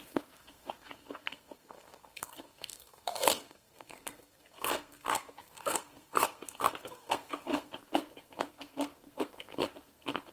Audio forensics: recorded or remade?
remade